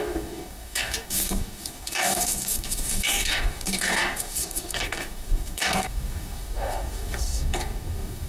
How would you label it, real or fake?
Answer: fake